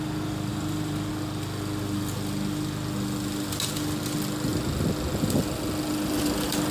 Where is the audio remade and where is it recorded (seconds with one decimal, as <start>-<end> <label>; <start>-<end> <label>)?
0.0-0.5 recorded; 0.5-1.1 remade; 1.1-6.7 recorded